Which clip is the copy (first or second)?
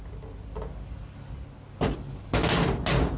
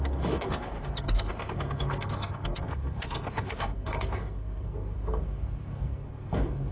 second